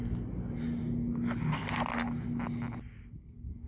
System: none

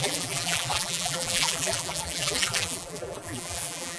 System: vocoder, BigVGAN v2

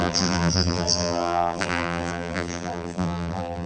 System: vocoder, BigVGAN v2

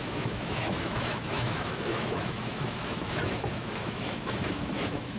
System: autoencoder, DAC-VAE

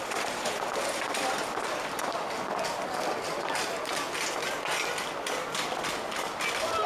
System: none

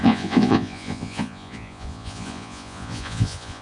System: vocoder, Vocos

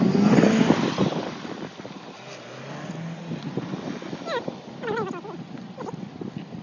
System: none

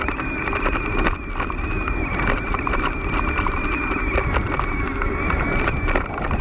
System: vocoder, BigVGAN v2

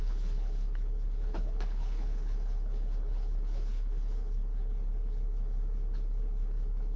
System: codec, HILCodec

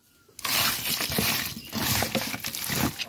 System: none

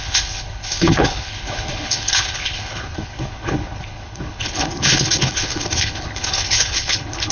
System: codec, HILCodec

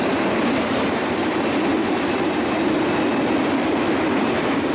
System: none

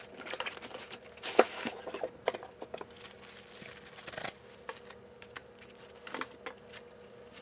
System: none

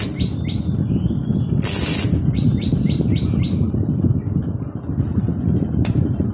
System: none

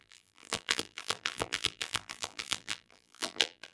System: vocoder, BigVGAN v2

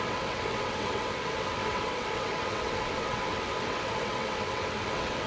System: vocoder, WaveNeXt